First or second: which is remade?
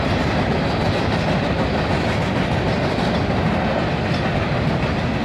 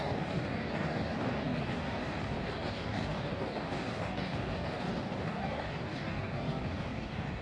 second